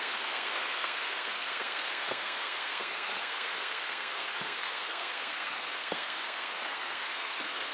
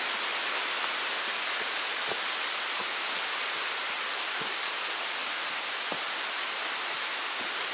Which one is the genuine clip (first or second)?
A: second